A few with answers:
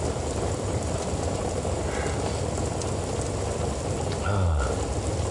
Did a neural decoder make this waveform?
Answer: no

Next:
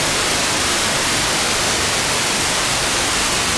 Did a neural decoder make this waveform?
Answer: no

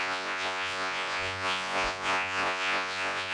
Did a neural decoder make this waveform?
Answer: yes